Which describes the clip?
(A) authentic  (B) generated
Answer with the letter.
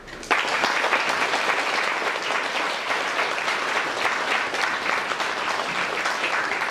A